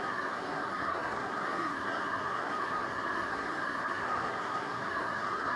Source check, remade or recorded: remade